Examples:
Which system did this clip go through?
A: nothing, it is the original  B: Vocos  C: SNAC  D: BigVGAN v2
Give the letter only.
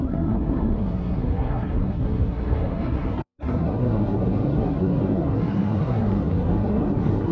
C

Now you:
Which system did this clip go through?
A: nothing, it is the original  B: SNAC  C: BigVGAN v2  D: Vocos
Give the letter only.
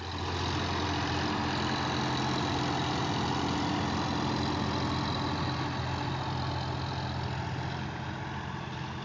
A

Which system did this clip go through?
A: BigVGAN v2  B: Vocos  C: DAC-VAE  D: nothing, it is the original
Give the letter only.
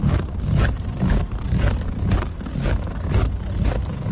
D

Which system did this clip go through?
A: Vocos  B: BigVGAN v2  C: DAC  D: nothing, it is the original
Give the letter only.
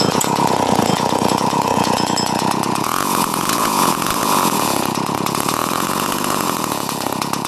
A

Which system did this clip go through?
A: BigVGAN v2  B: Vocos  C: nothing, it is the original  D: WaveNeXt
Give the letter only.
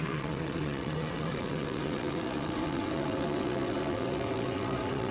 D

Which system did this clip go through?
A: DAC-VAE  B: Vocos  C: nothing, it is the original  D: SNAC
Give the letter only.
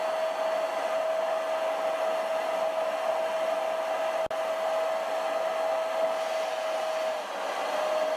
C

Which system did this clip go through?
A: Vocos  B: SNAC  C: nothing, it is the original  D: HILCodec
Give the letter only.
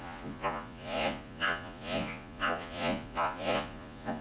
A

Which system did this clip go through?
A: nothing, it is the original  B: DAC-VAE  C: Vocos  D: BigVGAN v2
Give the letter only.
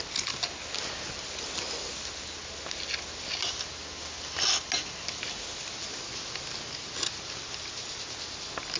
A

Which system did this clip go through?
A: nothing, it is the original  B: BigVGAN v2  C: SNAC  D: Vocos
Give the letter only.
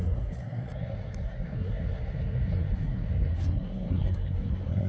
C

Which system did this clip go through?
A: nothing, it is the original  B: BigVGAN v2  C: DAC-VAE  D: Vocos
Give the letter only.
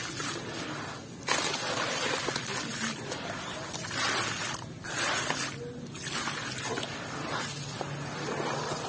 A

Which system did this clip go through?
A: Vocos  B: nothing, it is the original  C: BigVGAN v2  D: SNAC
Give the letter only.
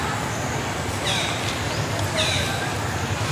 B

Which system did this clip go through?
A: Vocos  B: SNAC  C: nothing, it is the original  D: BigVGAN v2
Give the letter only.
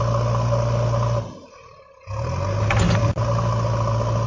C